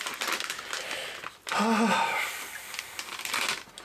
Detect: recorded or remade recorded